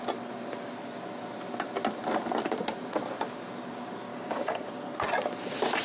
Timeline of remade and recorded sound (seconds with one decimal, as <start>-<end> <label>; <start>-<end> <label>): 0.0-4.1 recorded; 4.1-4.7 remade; 4.7-5.8 recorded